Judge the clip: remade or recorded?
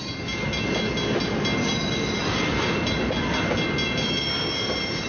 recorded